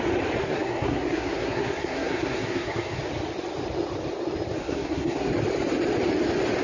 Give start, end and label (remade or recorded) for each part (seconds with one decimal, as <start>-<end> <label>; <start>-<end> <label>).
0.0-0.4 recorded; 0.4-3.0 remade; 3.0-4.6 recorded; 4.6-5.3 remade; 5.3-6.6 recorded